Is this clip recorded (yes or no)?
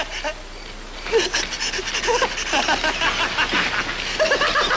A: yes